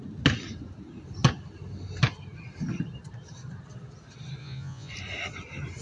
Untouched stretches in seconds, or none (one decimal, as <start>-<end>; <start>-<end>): 0.0-4.4; 4.9-5.8